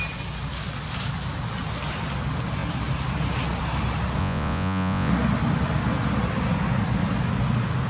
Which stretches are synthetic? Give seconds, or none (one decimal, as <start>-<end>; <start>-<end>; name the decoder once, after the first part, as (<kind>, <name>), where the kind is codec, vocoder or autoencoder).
4.2-5.1 (vocoder, Vocos)